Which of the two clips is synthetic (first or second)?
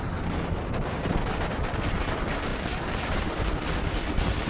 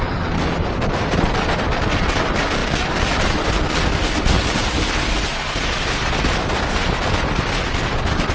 first